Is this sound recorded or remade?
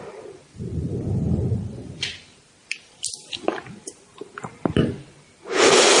remade